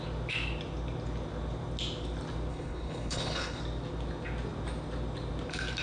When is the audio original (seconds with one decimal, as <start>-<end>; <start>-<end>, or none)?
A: 0.0-2.5; 3.6-5.8